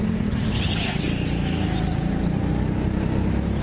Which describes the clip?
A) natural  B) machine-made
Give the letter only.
A